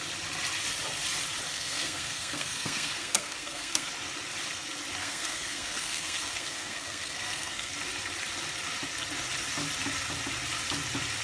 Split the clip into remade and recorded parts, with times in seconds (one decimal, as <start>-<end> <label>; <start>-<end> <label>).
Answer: 0.0-1.5 recorded; 1.5-3.9 remade; 3.9-5.0 recorded; 5.0-7.7 remade; 7.7-11.2 recorded